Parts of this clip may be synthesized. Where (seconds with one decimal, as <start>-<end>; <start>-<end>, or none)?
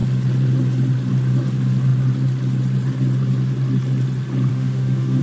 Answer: 4.5-5.2